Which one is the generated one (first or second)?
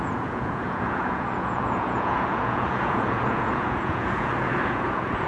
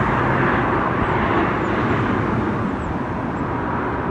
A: first